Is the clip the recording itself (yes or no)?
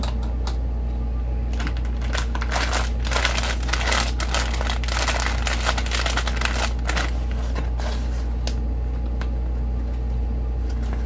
yes